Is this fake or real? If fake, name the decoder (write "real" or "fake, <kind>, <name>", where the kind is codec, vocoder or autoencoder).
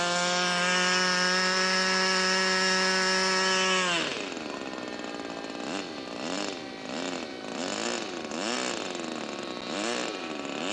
real